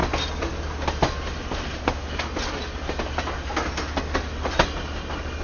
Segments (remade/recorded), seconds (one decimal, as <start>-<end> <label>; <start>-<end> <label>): 0.0-5.4 recorded